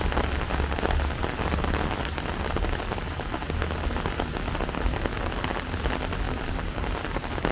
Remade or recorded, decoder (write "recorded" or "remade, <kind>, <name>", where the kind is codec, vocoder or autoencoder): recorded